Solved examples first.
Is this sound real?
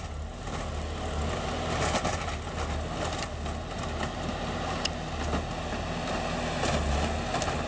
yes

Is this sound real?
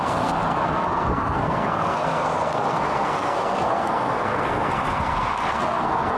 no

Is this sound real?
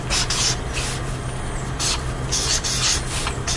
yes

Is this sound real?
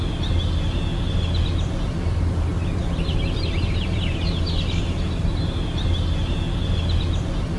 yes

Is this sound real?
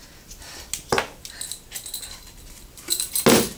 yes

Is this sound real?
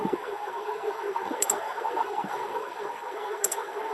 no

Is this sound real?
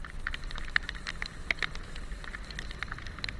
yes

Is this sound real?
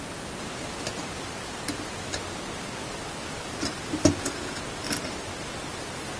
yes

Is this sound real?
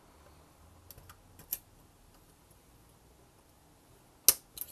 yes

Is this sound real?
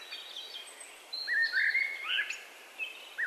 yes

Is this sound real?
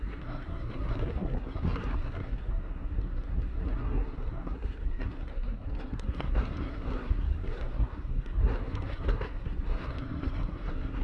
no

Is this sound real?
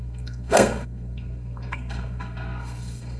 no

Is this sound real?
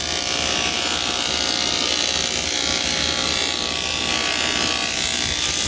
yes